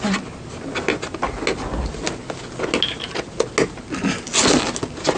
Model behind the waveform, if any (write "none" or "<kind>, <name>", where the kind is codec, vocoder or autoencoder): none